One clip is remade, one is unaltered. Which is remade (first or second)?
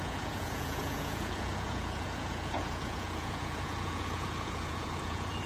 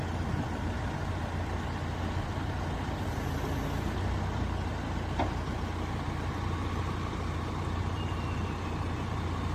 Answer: first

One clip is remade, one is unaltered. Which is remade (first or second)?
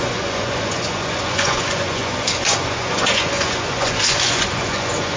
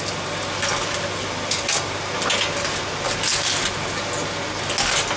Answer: first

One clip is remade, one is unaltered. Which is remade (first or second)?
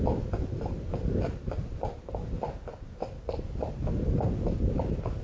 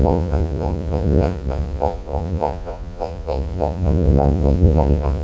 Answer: second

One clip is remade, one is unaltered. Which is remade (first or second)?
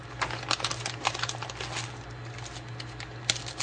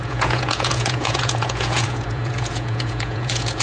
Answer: second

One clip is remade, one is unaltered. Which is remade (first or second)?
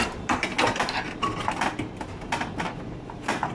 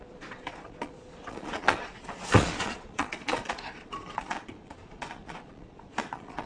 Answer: second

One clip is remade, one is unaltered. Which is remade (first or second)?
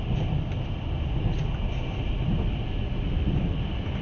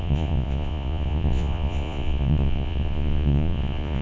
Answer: second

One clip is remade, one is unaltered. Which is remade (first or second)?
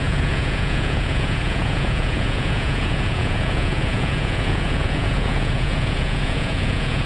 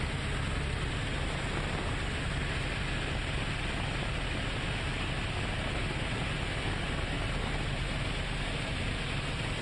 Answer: first